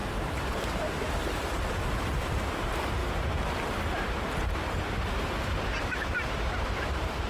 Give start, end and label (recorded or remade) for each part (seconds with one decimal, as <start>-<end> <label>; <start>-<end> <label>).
0.0-3.0 remade; 3.0-6.6 recorded; 6.6-7.3 remade